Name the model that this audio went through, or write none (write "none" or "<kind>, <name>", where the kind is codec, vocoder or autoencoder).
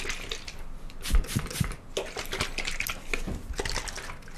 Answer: none